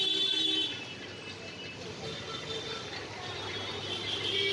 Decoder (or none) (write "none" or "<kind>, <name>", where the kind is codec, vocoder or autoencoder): none